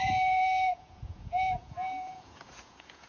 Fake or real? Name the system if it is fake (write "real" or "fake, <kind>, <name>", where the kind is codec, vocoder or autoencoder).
fake, vocoder, Vocos